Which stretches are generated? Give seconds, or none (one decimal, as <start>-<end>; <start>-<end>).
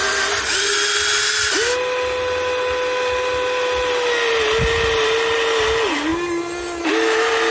none